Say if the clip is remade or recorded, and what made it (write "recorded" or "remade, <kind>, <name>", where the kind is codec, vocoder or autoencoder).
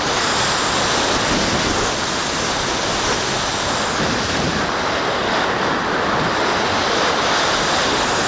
recorded